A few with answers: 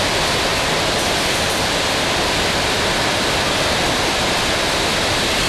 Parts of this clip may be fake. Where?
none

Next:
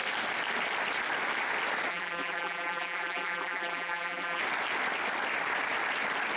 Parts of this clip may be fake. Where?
1.9-4.4 (vocoder, BigVGAN v2)

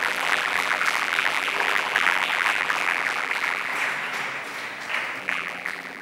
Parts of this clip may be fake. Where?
0.0-3.7 (vocoder, BigVGAN v2); 5.2-6.0